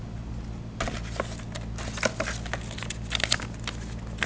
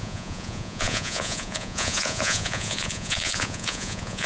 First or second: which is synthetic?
second